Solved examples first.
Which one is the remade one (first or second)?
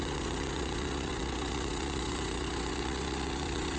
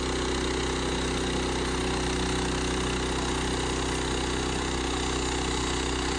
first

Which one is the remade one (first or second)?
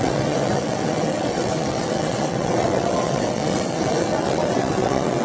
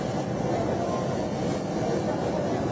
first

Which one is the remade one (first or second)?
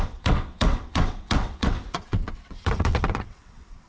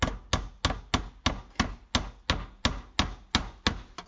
first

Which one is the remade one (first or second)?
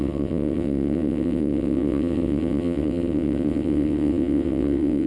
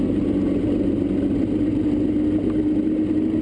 first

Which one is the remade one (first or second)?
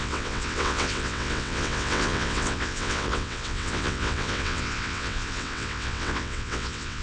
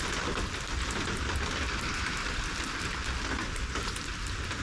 first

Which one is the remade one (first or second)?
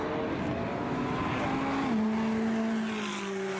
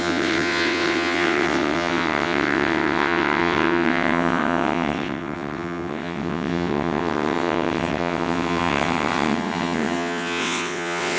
second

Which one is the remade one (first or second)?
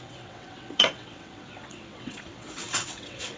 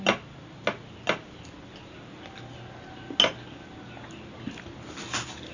first